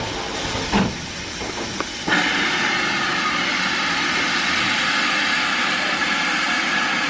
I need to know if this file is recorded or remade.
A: recorded